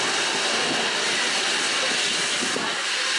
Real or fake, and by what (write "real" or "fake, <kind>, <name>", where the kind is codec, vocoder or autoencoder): real